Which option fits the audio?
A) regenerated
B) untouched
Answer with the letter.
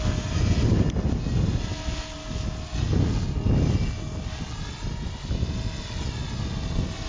B